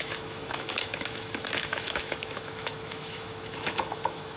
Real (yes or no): no